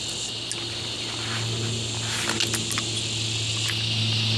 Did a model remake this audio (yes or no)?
no